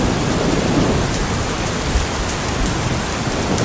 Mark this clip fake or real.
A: real